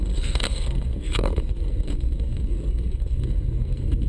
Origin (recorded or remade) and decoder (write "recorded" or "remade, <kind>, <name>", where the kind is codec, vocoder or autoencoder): remade, codec, SNAC